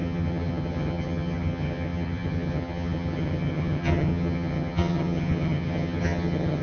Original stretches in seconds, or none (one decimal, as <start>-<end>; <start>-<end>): none

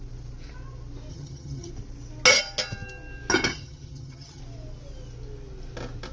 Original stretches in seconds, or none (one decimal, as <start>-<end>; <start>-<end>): 0.0-1.1; 1.7-3.5; 4.4-6.1

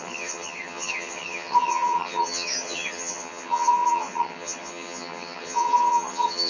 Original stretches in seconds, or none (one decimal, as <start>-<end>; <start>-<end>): none